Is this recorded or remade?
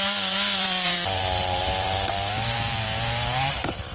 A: remade